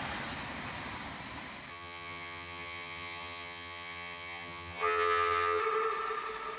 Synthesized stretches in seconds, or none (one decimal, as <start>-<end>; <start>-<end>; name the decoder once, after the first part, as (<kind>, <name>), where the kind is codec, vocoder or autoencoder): 1.7-5.6 (vocoder, HiFi-GAN)